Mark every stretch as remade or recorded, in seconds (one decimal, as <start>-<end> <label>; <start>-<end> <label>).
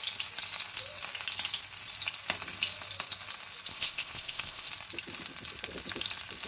0.0-3.7 recorded; 3.7-4.7 remade; 4.7-6.5 recorded